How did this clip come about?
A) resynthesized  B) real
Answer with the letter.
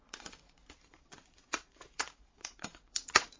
A